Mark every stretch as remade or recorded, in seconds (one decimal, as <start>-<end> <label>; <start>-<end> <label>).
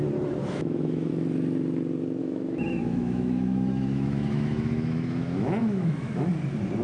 0.0-0.4 recorded; 0.4-1.1 remade; 1.1-2.2 recorded; 2.2-6.3 remade; 6.3-6.8 recorded